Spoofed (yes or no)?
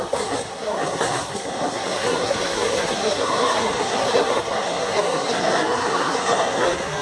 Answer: yes